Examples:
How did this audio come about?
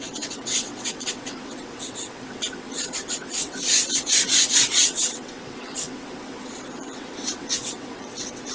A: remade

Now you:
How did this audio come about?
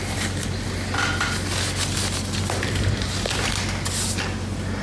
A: recorded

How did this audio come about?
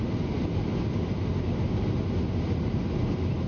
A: recorded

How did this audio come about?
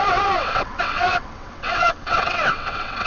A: remade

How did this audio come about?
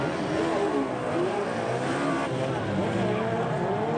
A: recorded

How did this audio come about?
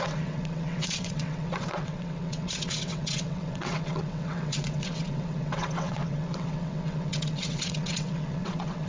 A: remade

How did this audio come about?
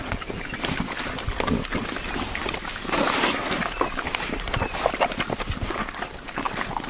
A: recorded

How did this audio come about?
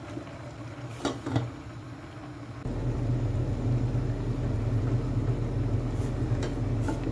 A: recorded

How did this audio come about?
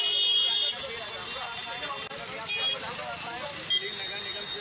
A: recorded